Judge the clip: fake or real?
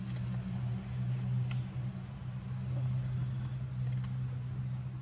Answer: real